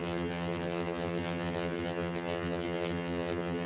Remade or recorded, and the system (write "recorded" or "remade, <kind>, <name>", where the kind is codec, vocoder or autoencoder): remade, vocoder, HiFi-GAN